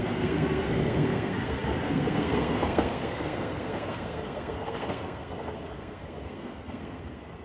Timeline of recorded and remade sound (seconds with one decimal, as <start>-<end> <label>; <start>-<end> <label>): 0.0-7.4 remade